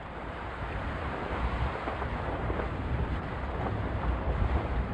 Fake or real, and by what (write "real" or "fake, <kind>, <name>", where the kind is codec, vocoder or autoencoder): fake, vocoder, BigVGAN v2